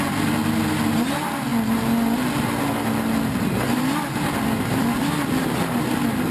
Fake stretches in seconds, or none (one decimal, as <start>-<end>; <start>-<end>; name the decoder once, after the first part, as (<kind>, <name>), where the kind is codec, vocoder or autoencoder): none